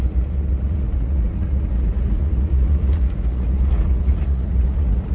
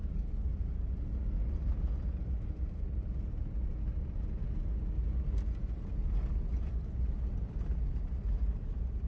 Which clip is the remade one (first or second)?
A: first